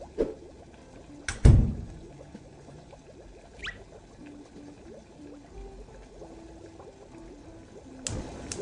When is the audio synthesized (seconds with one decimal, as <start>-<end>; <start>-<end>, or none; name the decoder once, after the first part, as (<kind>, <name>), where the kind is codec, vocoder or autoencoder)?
1.3-2.9 (vocoder, Vocos)